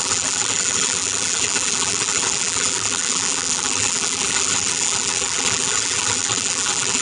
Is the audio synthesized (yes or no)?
yes